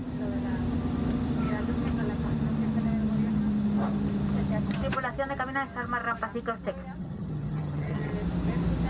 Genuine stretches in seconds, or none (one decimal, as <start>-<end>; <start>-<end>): 0.0-7.0; 8.1-8.9